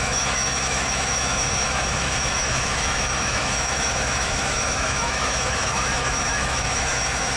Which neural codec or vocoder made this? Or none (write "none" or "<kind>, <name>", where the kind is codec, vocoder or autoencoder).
autoencoder, DAC-VAE